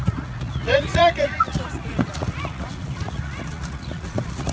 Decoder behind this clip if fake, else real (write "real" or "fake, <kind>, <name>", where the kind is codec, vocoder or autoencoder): fake, vocoder, Vocos